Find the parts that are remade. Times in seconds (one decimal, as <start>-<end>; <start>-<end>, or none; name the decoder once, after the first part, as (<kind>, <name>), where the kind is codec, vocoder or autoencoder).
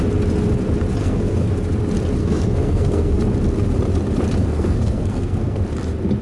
1.0-1.5 (codec, SNAC); 2.2-3.2; 4.4-5.6